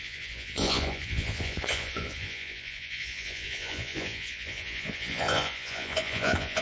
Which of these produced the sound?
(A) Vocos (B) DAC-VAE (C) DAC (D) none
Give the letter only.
A